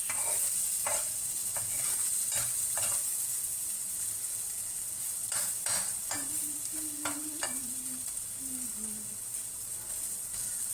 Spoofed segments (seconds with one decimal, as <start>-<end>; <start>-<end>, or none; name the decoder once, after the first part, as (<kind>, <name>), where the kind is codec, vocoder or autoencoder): none